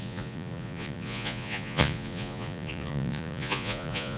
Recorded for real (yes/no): no